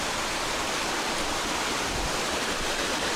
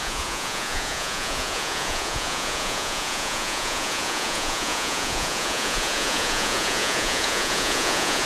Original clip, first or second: first